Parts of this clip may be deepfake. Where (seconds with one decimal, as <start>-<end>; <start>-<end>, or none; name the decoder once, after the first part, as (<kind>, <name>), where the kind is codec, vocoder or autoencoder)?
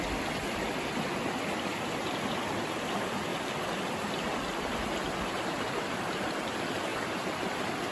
none